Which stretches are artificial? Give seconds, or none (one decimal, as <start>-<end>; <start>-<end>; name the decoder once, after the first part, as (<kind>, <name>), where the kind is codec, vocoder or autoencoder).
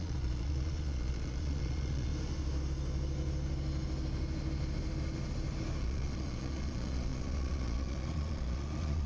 0.0-2.1 (vocoder, Vocos); 5.8-9.1